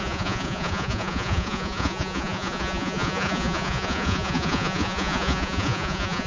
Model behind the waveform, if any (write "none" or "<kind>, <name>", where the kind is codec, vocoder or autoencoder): vocoder, Vocos